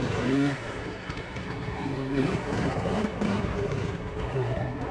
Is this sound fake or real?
fake